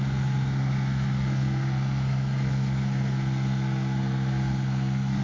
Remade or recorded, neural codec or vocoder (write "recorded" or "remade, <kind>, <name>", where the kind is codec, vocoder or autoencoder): remade, codec, SNAC